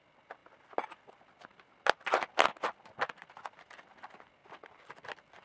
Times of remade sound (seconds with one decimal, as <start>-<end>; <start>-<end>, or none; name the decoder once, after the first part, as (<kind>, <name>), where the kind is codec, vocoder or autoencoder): none